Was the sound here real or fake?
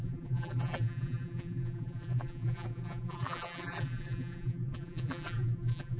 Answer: fake